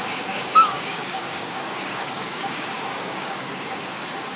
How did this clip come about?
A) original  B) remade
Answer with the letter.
B